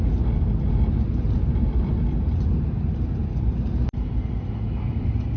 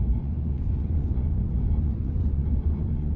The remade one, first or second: second